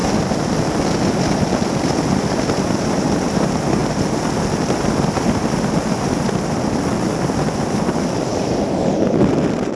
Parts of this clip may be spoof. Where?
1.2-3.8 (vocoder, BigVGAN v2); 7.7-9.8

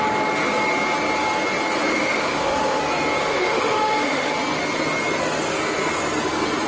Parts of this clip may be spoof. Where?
1.9-2.8 (autoencoder, DAC-VAE); 3.2-4.3

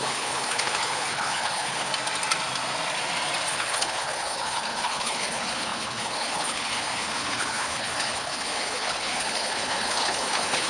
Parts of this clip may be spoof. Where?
0.0-1.9 (codec, HILCodec); 3.5-10.7

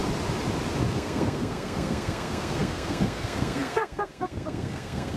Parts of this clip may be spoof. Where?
0.9-5.2 (codec, SNAC)

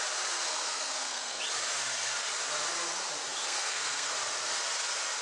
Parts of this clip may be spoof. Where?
0.5-1.4 (codec, SNAC); 3.4-4.1

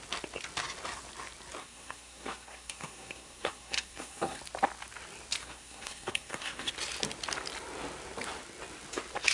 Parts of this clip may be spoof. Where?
1.6-4.4 (codec, SNAC); 5.4-6.7